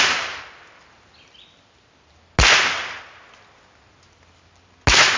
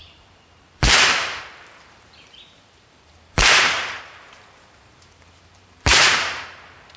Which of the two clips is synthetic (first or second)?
second